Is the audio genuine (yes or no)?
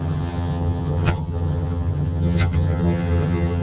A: no